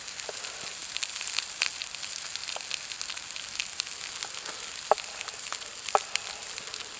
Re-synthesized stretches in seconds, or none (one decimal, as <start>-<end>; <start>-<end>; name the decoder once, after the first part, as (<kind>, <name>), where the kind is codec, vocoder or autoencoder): none